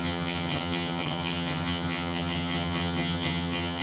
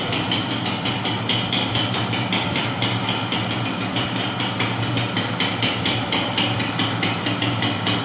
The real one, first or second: second